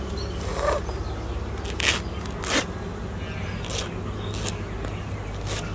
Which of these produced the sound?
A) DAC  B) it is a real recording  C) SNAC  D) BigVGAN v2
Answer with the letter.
B